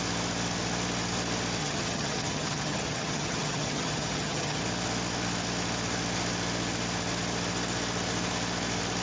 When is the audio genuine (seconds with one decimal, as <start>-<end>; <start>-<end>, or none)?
0.0-1.6; 4.6-9.0